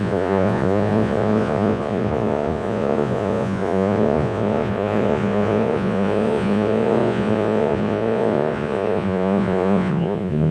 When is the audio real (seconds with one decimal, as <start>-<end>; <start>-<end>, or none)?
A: none